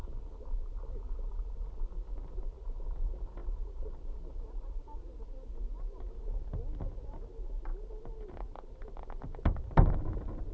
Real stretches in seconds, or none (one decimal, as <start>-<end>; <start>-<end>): 0.0-10.5